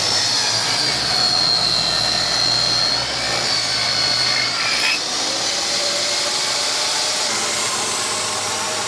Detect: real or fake real